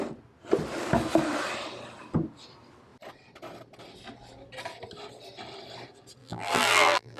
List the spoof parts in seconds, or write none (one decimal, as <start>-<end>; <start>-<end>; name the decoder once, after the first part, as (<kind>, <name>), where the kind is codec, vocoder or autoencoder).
6.2-7.2 (vocoder, BigVGAN v2)